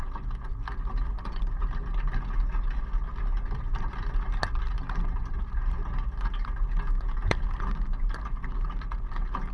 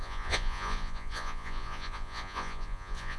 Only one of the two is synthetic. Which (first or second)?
second